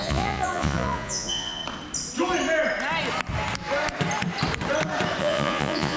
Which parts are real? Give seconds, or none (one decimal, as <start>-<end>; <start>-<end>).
1.6-5.2

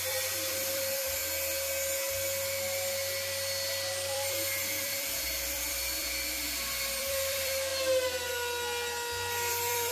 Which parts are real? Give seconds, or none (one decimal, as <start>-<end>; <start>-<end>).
1.2-3.9; 7.7-9.5

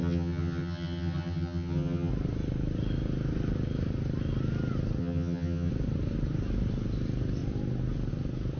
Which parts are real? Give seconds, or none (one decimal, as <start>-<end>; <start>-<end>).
2.1-5.0; 5.7-8.6

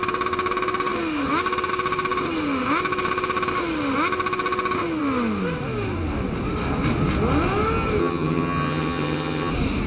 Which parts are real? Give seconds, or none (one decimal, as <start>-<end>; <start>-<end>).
0.0-8.0; 9.5-9.9

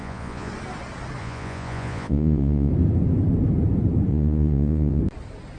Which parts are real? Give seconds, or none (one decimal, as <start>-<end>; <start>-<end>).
0.5-1.2; 2.7-4.1; 5.0-5.6